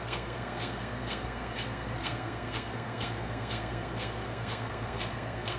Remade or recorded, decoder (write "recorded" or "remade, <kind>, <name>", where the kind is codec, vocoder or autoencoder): remade, codec, SNAC